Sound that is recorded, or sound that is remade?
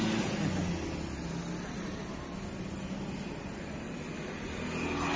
recorded